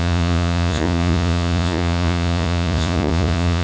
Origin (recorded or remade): remade